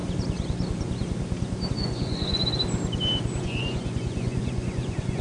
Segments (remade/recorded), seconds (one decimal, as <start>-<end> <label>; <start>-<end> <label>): 0.0-1.7 recorded; 1.7-2.4 remade; 2.4-3.4 recorded; 3.4-5.2 remade